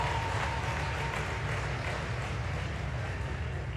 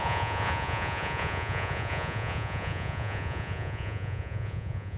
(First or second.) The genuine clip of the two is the first